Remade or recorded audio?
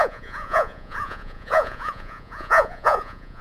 remade